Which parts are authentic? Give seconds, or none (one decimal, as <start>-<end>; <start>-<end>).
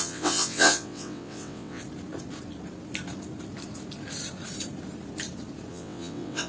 1.8-5.7